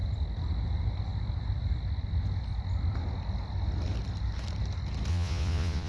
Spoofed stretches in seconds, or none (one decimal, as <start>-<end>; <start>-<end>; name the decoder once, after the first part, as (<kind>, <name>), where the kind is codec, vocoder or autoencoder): 5.1-5.9 (vocoder, Vocos)